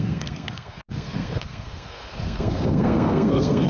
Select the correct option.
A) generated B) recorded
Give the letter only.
A